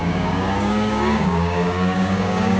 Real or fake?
fake